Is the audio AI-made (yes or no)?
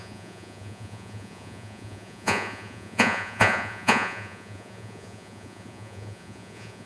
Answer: yes